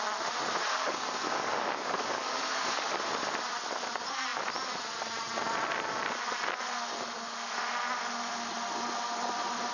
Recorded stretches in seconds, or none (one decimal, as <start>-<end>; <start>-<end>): 0.0-0.6; 2.9-9.7